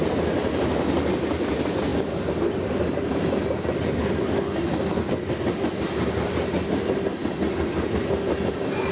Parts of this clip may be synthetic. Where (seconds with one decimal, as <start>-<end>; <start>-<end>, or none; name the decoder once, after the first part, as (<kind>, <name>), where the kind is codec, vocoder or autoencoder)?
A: none